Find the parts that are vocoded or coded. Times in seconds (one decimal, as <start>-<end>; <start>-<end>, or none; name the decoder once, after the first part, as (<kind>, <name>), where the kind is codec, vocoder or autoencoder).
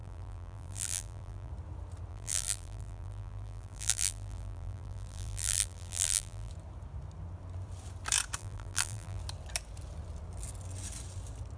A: 0.0-1.5 (vocoder, BigVGAN v2); 2.1-6.5; 8.4-9.2